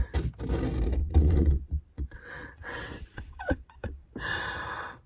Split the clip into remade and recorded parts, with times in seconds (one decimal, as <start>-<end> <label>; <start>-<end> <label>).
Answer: 0.0-1.0 recorded; 1.0-4.1 remade; 4.1-5.1 recorded